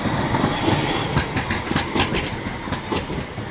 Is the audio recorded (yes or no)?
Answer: yes